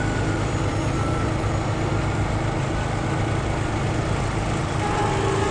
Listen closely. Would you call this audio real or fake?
real